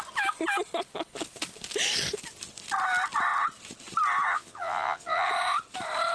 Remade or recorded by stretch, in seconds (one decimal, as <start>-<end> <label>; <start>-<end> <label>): 0.0-4.3 recorded; 4.3-5.3 remade; 5.3-6.1 recorded